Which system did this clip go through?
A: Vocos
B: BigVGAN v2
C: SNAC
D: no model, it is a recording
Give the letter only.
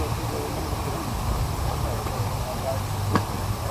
B